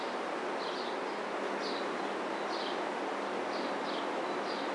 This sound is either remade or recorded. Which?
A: recorded